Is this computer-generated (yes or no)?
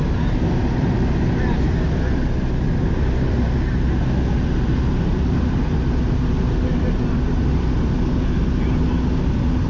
no